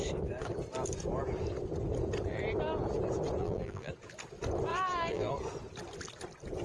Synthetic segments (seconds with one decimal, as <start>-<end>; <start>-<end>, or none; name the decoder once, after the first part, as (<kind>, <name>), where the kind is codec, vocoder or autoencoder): 3.4-3.9 (vocoder, BigVGAN v2); 4.7-5.3